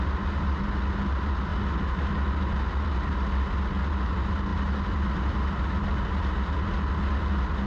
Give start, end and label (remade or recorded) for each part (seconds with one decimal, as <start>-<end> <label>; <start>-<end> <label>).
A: 0.0-7.7 recorded